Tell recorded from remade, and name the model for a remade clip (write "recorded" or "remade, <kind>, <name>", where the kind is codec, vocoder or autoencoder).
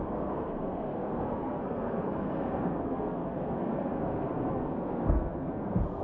remade, codec, SNAC